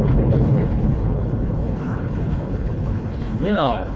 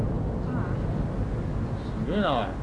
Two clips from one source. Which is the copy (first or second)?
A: first